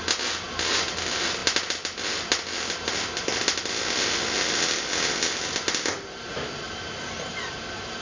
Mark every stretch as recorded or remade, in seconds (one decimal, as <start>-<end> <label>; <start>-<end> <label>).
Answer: 0.0-8.0 recorded